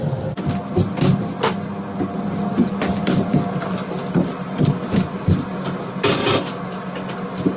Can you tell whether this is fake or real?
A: real